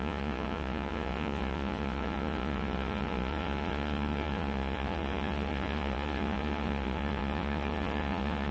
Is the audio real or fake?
fake